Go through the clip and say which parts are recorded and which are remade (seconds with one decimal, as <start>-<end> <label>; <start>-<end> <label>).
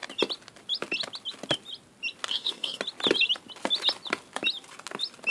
0.0-2.3 recorded; 2.3-2.8 remade; 2.8-5.3 recorded